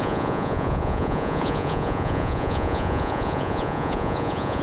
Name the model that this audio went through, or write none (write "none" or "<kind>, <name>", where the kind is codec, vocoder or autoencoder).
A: vocoder, Vocos